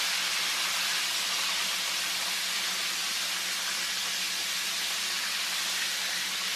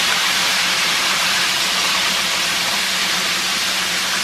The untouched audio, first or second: first